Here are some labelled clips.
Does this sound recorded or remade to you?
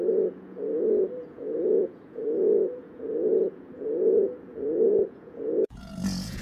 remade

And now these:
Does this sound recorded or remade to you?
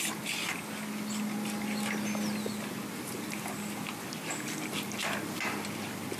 recorded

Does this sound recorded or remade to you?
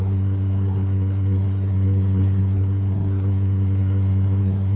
remade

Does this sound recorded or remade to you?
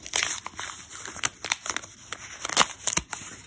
recorded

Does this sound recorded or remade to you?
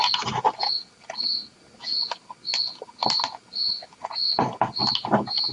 recorded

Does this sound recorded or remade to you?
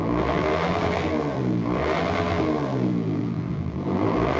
remade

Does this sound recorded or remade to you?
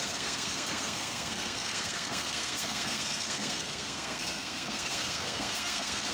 remade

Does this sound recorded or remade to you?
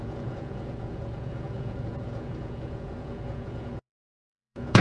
remade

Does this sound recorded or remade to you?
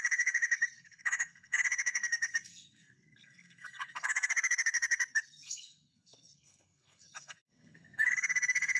remade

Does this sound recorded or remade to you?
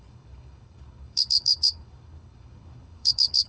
remade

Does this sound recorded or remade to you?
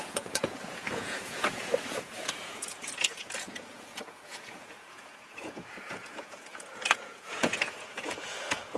remade